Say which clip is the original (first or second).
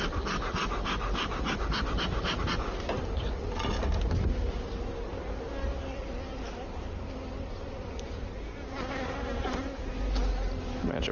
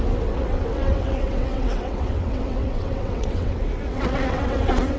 first